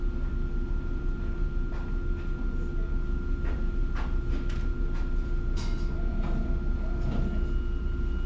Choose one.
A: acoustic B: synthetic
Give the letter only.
A